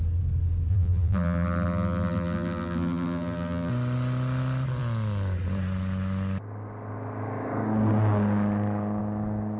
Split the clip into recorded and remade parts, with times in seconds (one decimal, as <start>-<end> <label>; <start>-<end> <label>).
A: 0.0-0.7 recorded; 0.7-3.7 remade; 3.7-9.6 recorded